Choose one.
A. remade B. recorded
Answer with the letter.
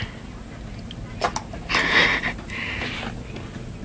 B